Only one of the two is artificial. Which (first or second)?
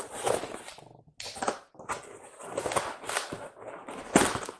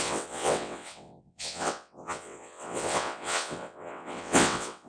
second